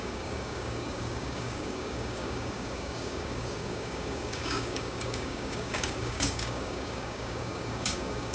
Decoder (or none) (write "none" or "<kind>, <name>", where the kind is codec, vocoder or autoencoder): codec, DAC